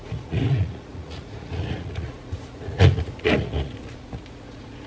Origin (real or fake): fake